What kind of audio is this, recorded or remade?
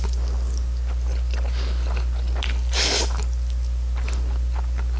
recorded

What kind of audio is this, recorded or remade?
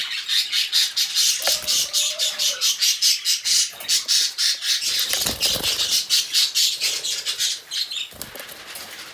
recorded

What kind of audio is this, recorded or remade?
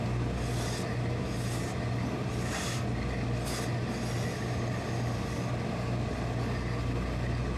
recorded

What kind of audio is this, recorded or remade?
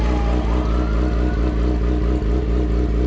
recorded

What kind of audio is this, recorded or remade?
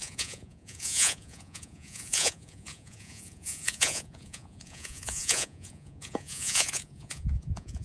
remade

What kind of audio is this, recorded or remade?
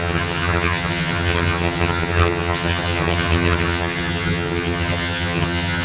remade